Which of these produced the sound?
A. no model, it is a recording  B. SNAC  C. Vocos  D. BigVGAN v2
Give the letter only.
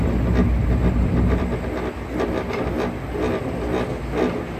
A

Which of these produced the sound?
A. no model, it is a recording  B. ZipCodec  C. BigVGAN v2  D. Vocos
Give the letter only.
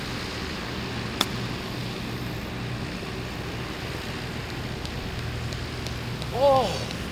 A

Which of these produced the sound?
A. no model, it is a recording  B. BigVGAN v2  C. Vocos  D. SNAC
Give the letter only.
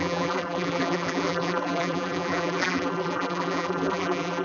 B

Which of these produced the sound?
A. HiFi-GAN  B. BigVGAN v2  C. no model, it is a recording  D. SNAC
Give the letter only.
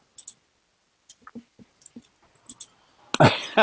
C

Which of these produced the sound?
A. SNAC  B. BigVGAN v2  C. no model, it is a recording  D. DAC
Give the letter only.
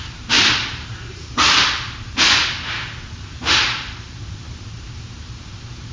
B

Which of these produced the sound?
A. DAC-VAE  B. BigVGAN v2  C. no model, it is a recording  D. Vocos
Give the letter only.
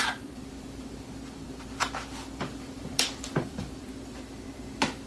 B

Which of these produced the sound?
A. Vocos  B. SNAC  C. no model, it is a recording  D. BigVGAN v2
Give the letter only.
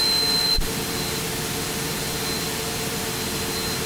D